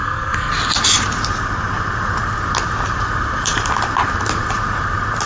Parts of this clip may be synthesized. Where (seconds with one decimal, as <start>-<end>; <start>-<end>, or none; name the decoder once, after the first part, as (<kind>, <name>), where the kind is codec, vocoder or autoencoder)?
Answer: 0.0-0.5 (codec, SNAC)